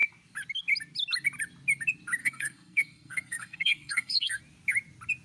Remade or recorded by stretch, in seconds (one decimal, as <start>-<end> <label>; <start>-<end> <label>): 0.0-2.2 recorded; 2.2-4.4 remade; 4.4-5.2 recorded